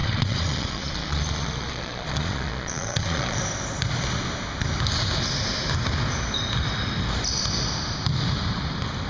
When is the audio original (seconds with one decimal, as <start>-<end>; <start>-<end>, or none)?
3.4-9.1